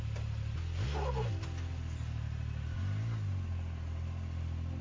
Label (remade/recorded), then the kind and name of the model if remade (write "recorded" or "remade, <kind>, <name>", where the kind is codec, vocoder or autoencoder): recorded